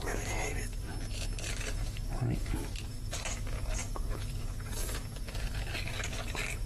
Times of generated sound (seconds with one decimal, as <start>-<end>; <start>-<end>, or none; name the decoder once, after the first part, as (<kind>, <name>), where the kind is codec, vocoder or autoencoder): 0.0-0.9 (codec, DAC); 1.5-6.7

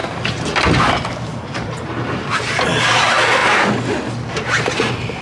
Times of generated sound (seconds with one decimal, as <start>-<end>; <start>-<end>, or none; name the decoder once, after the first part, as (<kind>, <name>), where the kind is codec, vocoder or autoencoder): 0.0-0.8 (vocoder, BigVGAN v2); 1.3-2.5

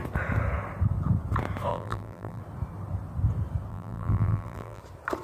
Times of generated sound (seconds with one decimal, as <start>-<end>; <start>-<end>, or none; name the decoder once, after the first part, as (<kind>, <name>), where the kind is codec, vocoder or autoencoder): 1.7-2.4 (vocoder, BigVGAN v2); 3.7-4.8

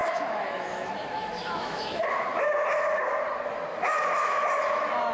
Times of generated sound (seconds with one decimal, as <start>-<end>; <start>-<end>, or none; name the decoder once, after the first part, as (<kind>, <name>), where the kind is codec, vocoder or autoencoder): 0.0-3.1 (autoencoder, DAC-VAE); 3.7-5.1